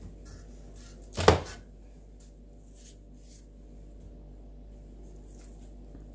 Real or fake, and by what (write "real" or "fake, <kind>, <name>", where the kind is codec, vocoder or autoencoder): real